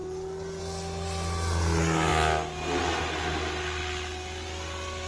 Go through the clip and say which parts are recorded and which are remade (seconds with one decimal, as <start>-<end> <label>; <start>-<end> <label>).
0.0-5.1 recorded